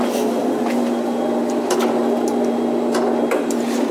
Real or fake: real